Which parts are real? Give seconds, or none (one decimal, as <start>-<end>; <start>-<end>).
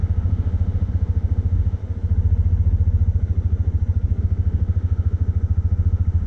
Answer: 1.8-4.2